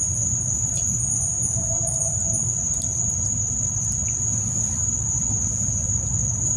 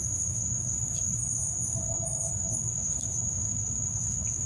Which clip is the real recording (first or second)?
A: first